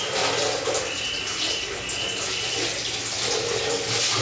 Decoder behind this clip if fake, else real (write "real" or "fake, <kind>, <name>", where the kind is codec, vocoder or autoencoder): real